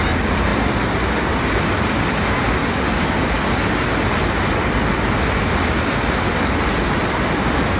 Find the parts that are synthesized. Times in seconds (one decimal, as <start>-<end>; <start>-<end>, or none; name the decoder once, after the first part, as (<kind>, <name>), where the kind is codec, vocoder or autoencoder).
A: none